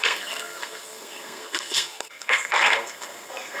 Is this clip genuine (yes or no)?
no